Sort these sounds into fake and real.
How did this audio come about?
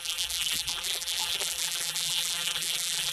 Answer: fake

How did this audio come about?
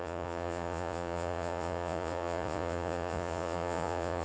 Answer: fake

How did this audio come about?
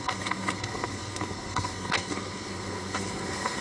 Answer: fake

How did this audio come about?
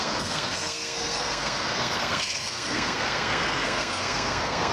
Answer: fake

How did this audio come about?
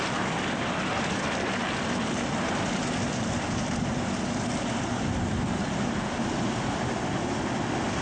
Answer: real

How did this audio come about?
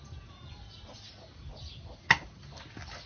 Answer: real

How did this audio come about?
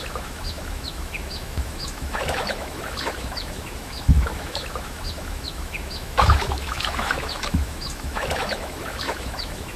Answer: fake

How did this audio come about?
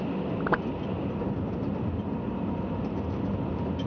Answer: real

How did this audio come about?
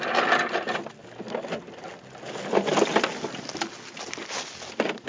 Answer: real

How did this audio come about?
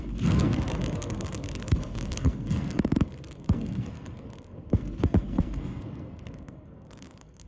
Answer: fake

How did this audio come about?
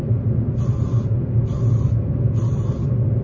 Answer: real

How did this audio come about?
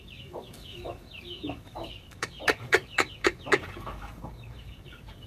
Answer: fake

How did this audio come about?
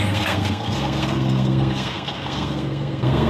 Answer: fake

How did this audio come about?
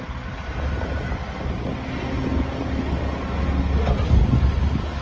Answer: real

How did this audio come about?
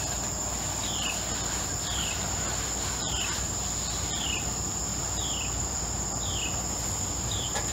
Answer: real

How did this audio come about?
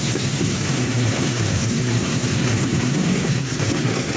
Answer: fake